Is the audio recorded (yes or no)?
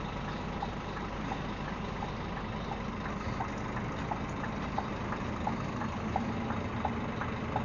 yes